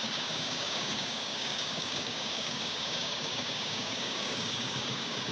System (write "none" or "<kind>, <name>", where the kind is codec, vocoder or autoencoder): codec, DAC